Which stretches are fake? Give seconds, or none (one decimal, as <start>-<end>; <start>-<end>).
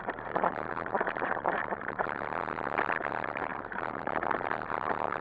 0.0-2.4; 3.1-5.2